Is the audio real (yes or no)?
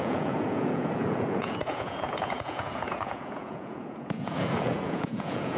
no